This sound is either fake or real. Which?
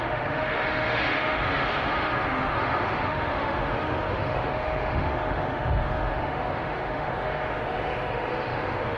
fake